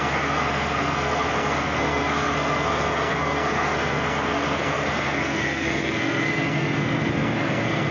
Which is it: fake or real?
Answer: fake